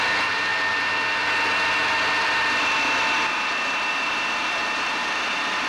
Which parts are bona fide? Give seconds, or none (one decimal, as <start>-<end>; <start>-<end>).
0.0-5.7

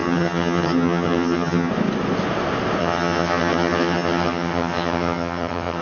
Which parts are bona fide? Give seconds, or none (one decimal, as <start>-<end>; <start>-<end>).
1.7-2.8